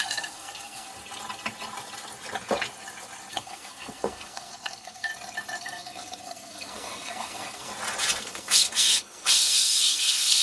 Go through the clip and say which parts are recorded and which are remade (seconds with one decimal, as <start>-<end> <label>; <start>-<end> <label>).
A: 0.0-0.9 remade; 0.9-3.3 recorded; 3.3-5.1 remade; 5.1-5.6 recorded; 5.6-7.7 remade; 7.7-8.2 recorded; 8.2-10.4 remade